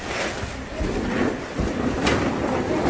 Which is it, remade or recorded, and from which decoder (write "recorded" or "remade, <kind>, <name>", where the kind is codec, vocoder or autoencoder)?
remade, vocoder, BigVGAN v2